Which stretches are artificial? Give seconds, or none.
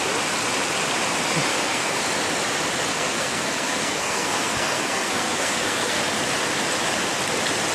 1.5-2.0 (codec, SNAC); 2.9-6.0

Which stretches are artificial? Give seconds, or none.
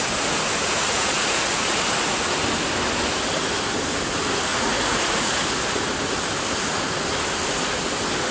0.6-1.8 (vocoder, Vocos); 4.5-5.3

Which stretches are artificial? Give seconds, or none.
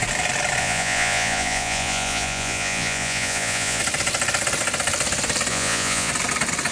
0.6-3.8 (vocoder, Vocos); 5.5-6.1